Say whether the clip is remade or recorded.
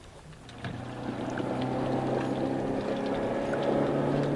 recorded